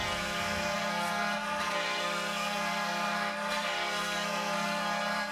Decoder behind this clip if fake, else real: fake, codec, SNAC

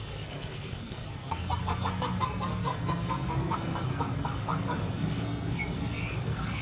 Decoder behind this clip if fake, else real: fake, codec, SNAC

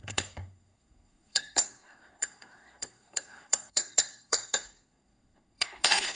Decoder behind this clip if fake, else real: fake, codec, SNAC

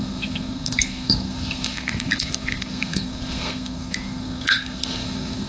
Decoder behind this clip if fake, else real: fake, codec, SNAC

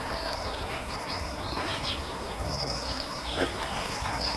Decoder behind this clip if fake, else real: fake, codec, SNAC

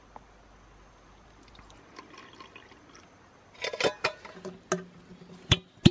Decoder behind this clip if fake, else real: real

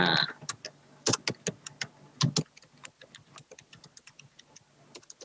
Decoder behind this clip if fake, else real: real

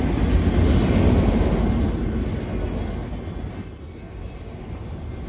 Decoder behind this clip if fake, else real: real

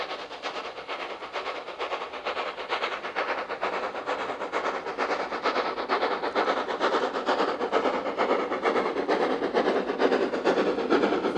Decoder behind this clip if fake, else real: real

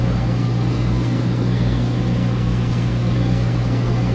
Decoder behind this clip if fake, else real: fake, codec, SNAC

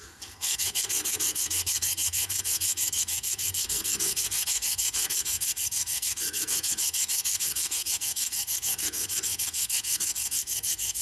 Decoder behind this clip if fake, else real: fake, codec, SNAC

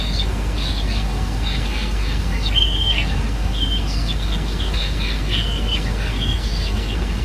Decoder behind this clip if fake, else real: fake, codec, SNAC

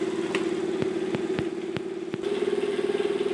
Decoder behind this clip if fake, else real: real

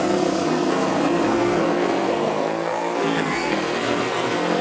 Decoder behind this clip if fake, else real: fake, codec, SNAC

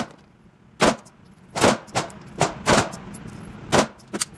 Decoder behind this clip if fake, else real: real